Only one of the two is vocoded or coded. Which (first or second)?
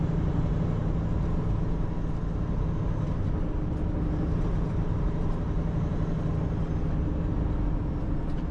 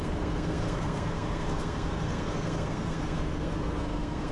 second